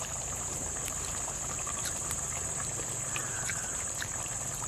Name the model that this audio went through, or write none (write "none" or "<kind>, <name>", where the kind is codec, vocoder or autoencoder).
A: vocoder, BigVGAN v2